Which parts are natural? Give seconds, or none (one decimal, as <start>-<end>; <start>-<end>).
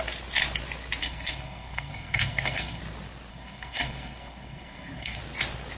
0.0-1.0; 2.8-3.3; 5.2-5.8